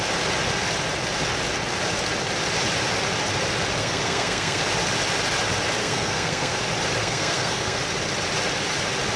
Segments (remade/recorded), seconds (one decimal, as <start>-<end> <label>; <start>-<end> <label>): 0.0-3.8 recorded; 3.8-4.6 remade; 4.6-5.8 recorded; 5.8-6.6 remade; 6.6-7.0 recorded; 7.0-7.8 remade; 7.8-9.2 recorded